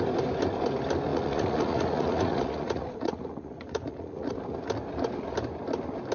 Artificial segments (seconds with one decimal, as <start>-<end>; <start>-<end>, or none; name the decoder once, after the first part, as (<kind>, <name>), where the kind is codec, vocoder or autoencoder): 1.1-4.3 (vocoder, Vocos)